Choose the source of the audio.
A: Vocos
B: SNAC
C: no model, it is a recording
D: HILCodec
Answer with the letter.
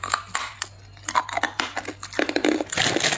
C